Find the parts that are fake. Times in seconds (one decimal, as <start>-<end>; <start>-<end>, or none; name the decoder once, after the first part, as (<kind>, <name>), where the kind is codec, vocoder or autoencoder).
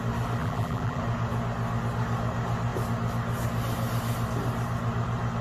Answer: 0.4-1.0 (vocoder, BigVGAN v2)